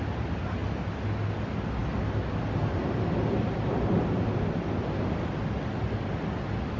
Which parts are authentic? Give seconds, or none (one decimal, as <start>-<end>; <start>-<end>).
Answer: 0.0-6.8